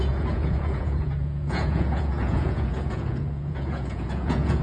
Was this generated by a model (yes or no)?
yes